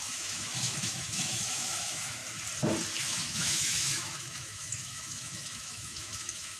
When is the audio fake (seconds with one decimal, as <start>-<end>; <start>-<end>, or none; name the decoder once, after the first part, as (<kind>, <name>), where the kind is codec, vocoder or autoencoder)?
0.0-2.2 (autoencoder, DAC-VAE); 3.0-6.6